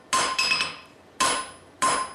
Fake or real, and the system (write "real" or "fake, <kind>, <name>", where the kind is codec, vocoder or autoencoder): real